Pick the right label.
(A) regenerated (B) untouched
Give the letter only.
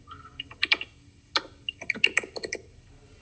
B